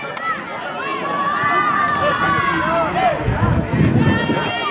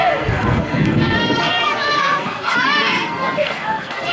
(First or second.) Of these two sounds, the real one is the first